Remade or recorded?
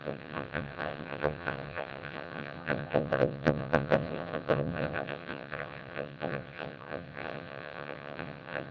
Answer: remade